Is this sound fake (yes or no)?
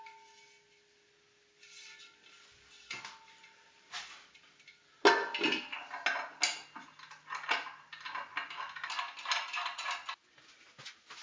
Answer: no